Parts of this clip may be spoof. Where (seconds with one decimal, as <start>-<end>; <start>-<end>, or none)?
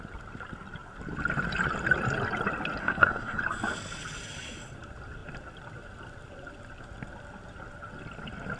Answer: 2.8-3.4